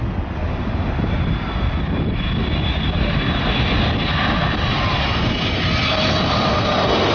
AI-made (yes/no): no